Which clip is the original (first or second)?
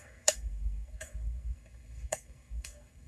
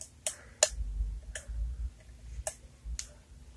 second